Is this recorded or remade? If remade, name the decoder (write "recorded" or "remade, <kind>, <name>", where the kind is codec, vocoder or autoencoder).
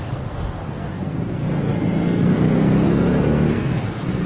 remade, codec, SNAC